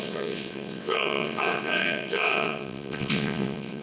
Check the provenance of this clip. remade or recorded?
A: remade